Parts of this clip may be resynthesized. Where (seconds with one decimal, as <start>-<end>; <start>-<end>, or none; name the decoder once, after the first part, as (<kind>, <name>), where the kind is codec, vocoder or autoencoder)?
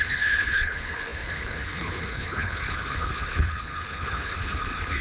0.0-5.0 (codec, HILCodec)